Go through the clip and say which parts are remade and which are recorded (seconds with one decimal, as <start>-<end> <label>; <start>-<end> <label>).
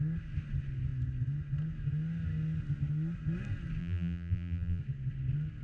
0.0-3.8 recorded; 3.8-4.8 remade; 4.8-5.6 recorded